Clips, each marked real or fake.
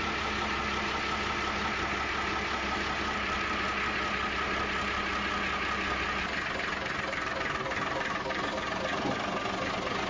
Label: real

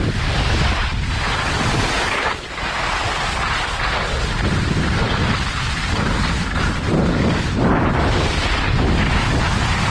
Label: real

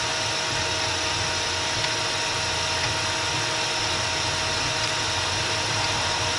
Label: real